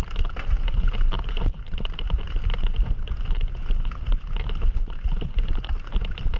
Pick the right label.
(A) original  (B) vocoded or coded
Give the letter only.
A